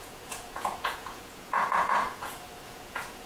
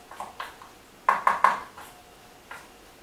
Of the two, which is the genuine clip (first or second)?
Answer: second